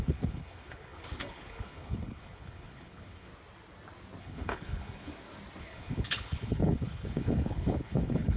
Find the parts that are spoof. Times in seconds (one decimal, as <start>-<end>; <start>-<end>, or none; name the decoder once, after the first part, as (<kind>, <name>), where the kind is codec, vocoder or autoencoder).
0.0-3.3 (codec, HILCodec); 4.2-5.1; 5.6-8.4